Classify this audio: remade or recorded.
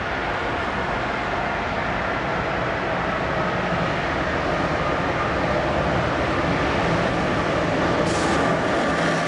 recorded